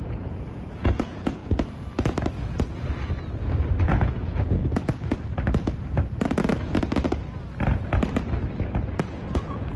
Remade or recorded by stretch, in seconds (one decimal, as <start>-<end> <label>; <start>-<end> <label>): 0.0-1.4 remade; 1.4-3.8 recorded; 3.8-4.6 remade; 4.6-9.0 recorded; 9.0-9.8 remade